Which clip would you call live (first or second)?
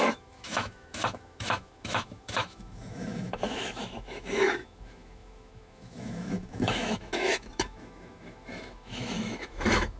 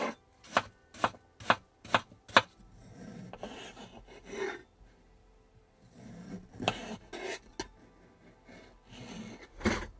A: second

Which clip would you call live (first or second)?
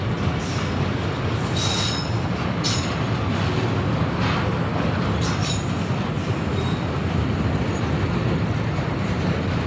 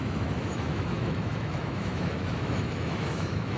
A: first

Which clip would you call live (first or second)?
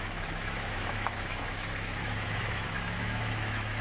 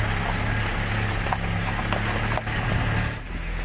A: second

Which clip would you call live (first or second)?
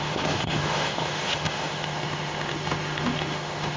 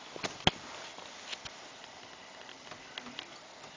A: second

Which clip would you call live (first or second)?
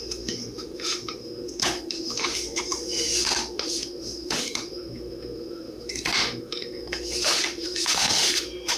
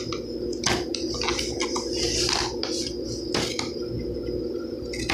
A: second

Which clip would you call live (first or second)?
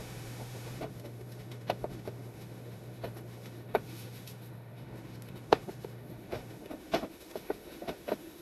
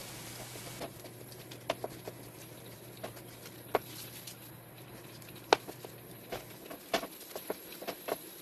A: second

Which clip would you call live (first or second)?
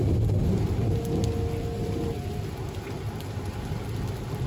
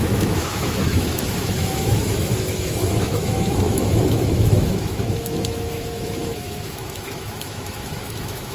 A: first